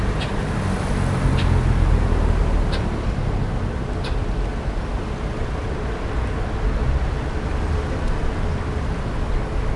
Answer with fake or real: real